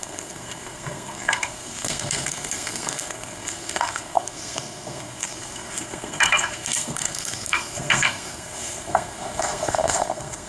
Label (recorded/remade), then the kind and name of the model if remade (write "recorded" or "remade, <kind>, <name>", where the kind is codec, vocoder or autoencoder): remade, codec, SNAC